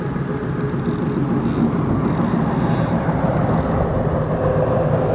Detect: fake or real real